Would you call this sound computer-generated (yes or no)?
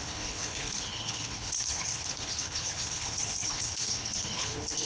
yes